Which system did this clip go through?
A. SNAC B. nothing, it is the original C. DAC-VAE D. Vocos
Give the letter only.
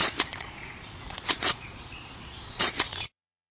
D